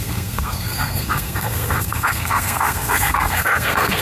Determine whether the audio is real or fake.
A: fake